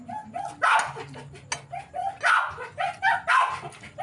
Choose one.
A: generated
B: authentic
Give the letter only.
B